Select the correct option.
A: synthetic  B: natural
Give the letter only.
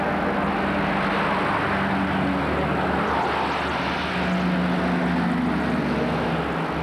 B